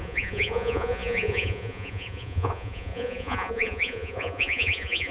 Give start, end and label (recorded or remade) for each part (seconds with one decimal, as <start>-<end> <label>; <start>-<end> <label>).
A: 0.0-5.1 remade